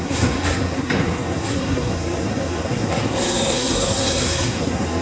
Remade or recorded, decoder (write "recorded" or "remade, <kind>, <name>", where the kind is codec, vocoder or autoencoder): remade, codec, SNAC